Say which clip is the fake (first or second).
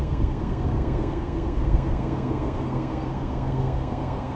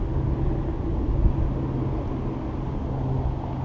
first